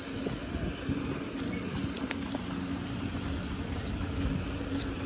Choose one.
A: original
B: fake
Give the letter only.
A